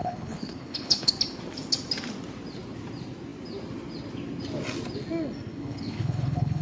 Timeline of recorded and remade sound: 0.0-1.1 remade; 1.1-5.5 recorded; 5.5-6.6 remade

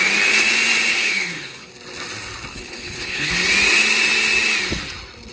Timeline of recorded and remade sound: 0.0-0.9 recorded; 0.9-1.7 remade; 1.7-2.5 recorded; 2.5-3.3 remade; 3.3-5.3 recorded

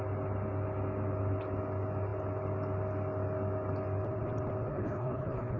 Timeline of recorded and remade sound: 0.0-4.7 recorded; 4.7-5.6 remade

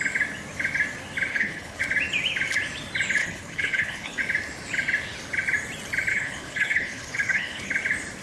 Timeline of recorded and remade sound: 0.0-1.3 recorded; 1.3-1.8 remade; 1.8-3.2 recorded; 3.2-4.2 remade; 4.2-6.1 recorded; 6.1-7.7 remade; 7.7-8.2 recorded

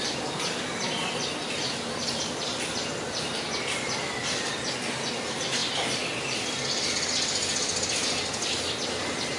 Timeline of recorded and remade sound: 0.0-9.4 recorded

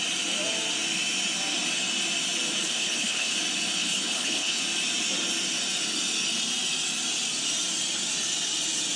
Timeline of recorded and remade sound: 0.0-2.6 recorded; 2.6-3.3 remade; 3.3-3.8 recorded; 3.8-4.6 remade; 4.6-9.0 recorded

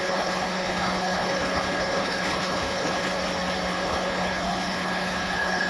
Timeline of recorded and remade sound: 0.0-3.1 remade; 3.1-3.7 recorded; 3.7-5.7 remade